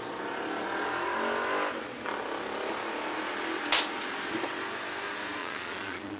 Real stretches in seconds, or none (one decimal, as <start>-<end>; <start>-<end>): 0.0-5.4